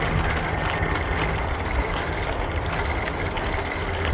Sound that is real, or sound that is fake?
real